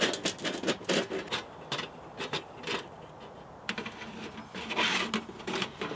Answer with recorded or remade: recorded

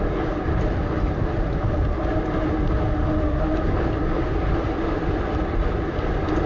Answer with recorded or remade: recorded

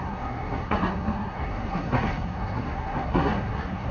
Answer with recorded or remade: remade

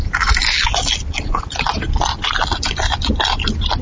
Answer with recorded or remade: recorded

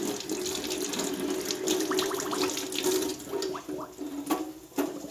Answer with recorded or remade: recorded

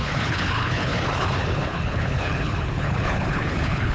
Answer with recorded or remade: remade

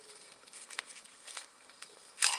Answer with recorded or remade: remade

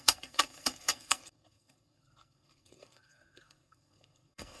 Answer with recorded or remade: remade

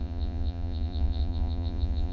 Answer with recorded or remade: remade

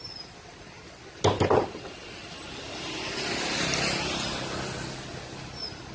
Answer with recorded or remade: recorded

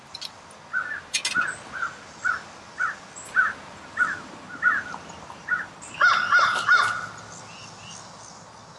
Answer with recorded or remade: recorded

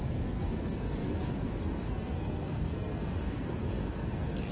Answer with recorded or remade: remade